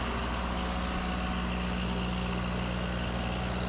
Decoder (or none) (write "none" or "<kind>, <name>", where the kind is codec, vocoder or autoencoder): none